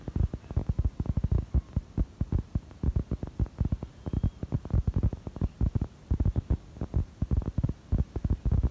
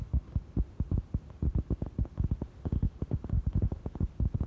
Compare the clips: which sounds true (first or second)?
first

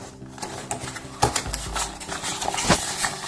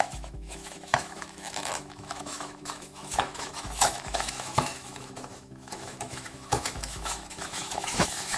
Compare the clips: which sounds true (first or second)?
first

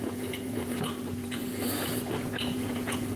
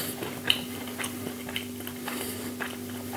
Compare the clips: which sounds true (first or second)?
second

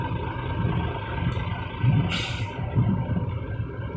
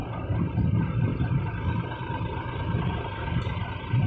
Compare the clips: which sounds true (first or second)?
first